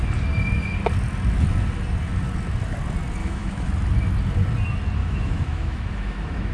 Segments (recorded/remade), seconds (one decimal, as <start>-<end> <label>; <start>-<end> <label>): 0.0-3.2 recorded; 3.2-3.7 remade; 3.7-5.0 recorded; 5.0-6.5 remade